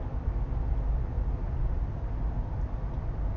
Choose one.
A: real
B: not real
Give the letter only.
A